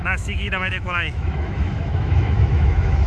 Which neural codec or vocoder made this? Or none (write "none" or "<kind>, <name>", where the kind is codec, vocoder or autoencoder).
autoencoder, DAC-VAE